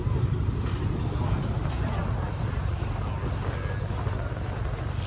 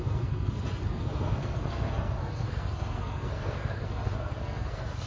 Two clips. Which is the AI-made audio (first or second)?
second